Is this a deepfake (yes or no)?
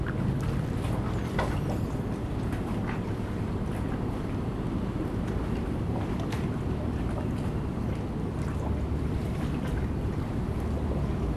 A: no